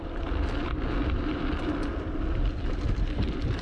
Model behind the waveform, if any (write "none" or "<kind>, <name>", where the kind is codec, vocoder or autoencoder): none